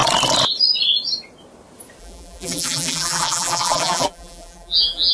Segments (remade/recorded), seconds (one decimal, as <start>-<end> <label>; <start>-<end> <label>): 0.0-2.0 recorded; 2.0-5.1 remade